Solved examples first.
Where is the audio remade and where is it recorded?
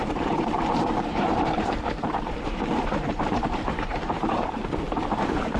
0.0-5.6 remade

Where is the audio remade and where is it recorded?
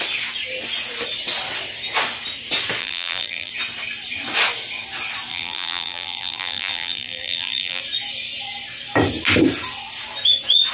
0.0-2.8 recorded; 2.8-3.5 remade; 3.5-5.3 recorded; 5.3-7.8 remade; 7.8-10.7 recorded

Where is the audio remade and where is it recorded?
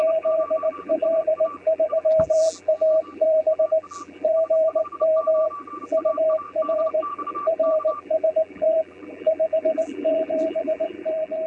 0.0-11.5 remade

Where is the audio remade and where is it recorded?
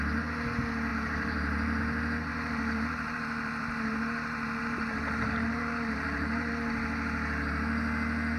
0.0-0.9 recorded; 0.9-1.8 remade; 1.8-2.3 recorded; 2.3-6.5 remade; 6.5-8.4 recorded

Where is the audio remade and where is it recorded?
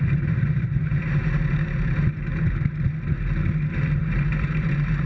0.0-0.9 remade; 0.9-4.0 recorded; 4.0-5.1 remade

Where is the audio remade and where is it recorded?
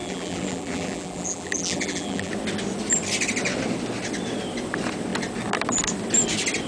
0.0-2.3 remade; 2.3-6.7 recorded